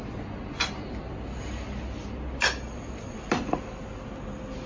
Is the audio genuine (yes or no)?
yes